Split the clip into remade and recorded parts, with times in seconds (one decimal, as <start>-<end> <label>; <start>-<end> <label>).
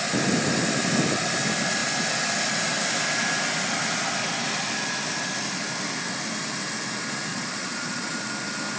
0.0-7.3 recorded; 7.3-8.2 remade; 8.2-8.8 recorded